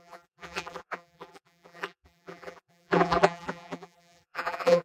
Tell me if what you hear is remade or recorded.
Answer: remade